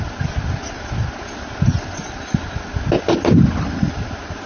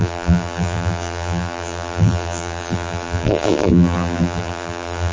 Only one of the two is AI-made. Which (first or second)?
second